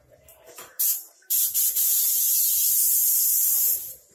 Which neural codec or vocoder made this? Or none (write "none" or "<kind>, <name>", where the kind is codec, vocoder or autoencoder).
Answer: vocoder, BigVGAN v2